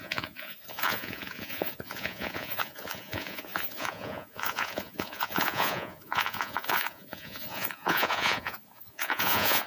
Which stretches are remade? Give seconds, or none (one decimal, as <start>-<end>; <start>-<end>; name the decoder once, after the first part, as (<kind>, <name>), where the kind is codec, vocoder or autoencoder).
0.0-9.7 (vocoder, Vocos)